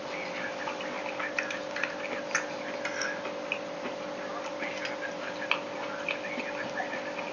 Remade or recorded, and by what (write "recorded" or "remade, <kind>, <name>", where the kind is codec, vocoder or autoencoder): recorded